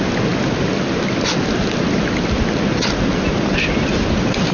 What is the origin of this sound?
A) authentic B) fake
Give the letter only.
A